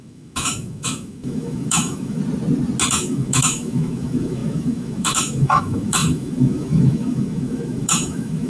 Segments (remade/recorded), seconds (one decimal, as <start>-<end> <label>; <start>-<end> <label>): 0.0-2.2 remade; 2.2-2.9 recorded; 2.9-8.5 remade